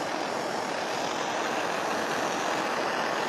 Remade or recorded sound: recorded